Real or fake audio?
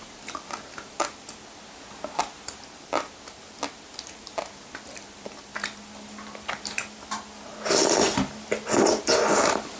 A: real